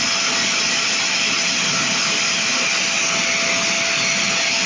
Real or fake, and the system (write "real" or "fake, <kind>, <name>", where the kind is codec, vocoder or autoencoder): real